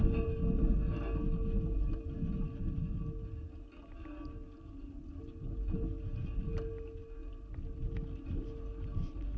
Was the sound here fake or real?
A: real